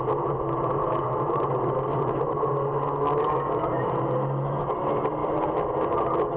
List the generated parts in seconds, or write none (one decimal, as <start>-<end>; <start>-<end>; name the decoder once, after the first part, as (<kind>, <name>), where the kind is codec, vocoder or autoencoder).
none